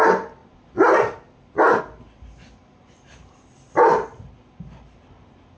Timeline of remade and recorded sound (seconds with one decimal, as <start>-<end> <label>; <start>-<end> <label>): 0.0-5.6 recorded